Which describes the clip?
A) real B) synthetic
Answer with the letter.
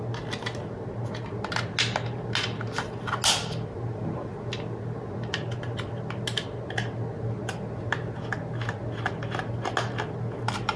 A